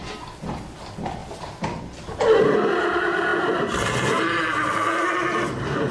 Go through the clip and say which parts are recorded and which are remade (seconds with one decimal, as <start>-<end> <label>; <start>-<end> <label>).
0.0-1.2 recorded; 1.2-2.2 remade; 2.2-5.9 recorded